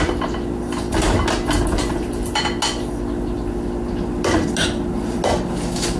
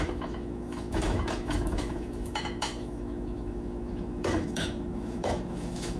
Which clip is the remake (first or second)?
second